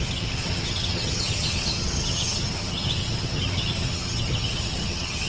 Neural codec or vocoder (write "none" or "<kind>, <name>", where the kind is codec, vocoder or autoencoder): vocoder, HiFi-GAN